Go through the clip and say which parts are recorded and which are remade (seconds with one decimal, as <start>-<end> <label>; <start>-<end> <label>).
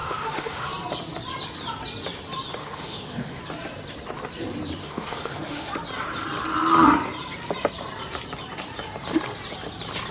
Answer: 0.0-0.7 remade; 0.7-2.6 recorded; 2.6-3.4 remade; 3.4-4.8 recorded; 4.8-5.7 remade; 5.7-10.1 recorded